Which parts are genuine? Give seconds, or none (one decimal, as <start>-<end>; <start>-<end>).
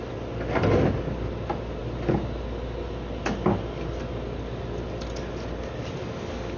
0.0-6.6